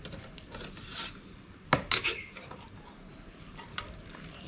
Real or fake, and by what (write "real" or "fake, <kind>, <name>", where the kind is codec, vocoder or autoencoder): real